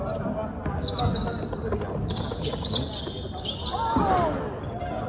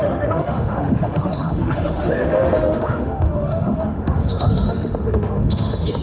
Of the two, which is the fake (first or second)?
second